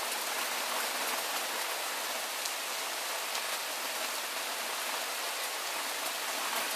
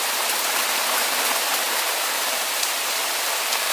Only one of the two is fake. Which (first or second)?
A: second